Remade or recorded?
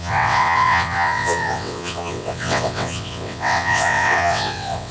remade